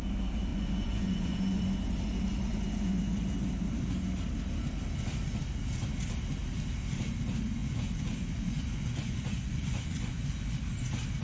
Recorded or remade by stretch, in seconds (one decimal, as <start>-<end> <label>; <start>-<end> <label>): 0.0-0.5 recorded; 0.5-1.6 remade; 1.6-2.5 recorded; 2.5-3.3 remade; 3.3-7.6 recorded; 7.6-10.6 remade; 10.6-11.2 recorded